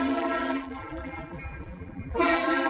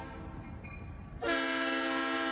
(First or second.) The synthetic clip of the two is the first